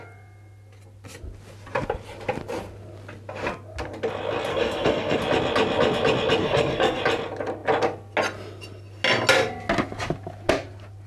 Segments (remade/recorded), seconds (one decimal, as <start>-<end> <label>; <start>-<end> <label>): 0.0-4.5 recorded; 4.5-5.2 remade; 5.2-6.4 recorded; 6.4-7.0 remade; 7.0-11.1 recorded